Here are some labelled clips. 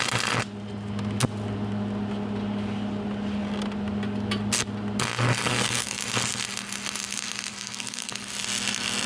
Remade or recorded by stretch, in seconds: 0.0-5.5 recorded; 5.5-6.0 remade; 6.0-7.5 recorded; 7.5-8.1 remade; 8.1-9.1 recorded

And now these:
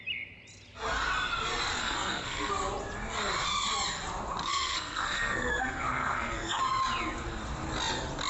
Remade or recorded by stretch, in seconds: 0.0-1.8 recorded; 1.8-2.5 remade; 2.5-4.4 recorded; 4.4-6.6 remade; 6.6-8.3 recorded